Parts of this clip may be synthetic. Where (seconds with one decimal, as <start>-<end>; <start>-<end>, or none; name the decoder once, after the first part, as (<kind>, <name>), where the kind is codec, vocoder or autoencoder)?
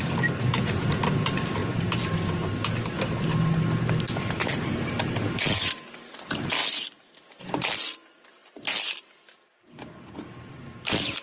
none